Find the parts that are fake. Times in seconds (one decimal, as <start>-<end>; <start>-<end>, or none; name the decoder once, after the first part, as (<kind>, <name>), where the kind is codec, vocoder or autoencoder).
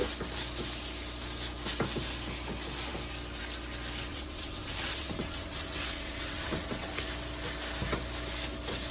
4.1-6.9 (vocoder, WaveNeXt)